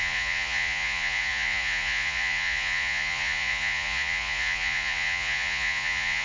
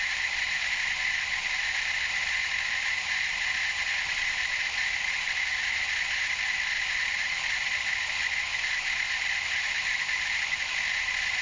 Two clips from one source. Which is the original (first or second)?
second